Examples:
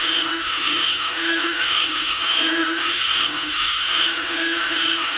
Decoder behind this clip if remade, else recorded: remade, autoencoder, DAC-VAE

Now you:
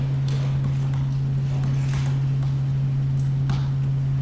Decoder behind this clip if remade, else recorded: recorded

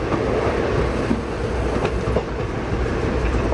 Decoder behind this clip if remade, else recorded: recorded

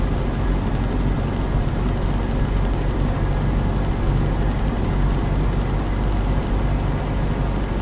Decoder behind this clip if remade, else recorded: recorded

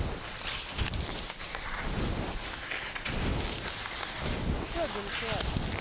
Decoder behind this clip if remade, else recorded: recorded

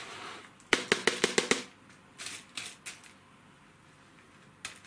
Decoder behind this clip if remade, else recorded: recorded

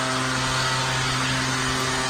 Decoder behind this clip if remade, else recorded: recorded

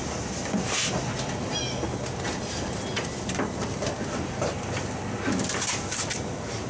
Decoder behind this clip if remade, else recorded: recorded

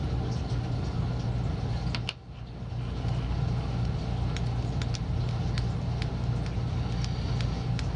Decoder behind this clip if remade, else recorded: recorded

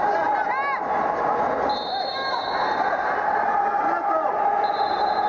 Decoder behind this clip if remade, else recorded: recorded